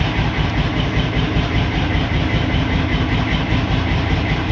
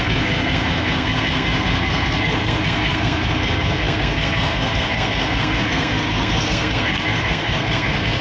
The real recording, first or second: first